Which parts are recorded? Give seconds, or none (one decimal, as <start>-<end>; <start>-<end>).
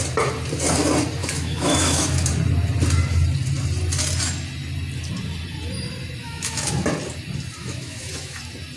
0.0-1.2; 2.3-6.2; 6.7-7.6; 8.4-8.8